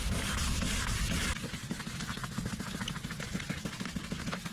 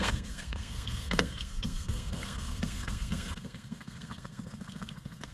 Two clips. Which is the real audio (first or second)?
first